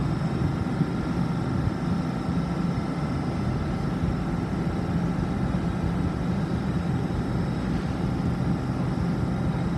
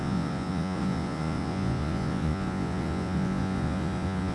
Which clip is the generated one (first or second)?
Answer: second